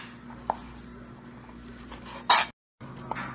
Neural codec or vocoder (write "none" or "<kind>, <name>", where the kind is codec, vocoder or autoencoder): none